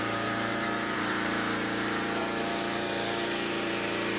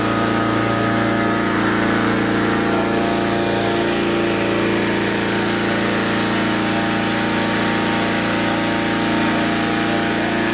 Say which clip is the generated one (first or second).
first